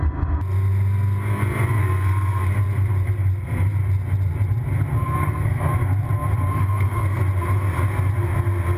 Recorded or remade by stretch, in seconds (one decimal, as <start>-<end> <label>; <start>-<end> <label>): 0.0-1.8 recorded; 1.8-2.4 remade; 2.4-5.0 recorded; 5.0-5.7 remade; 5.7-6.5 recorded; 6.5-7.2 remade; 7.2-8.8 recorded